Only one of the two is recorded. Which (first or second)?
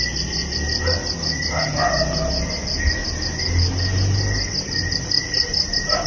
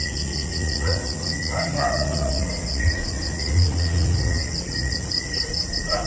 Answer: first